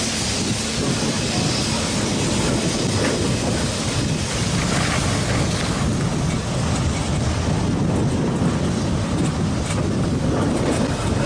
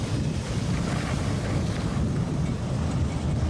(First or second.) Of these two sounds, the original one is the first